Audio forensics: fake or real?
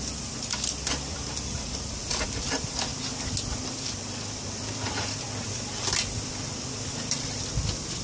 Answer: real